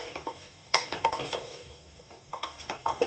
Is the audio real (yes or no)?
no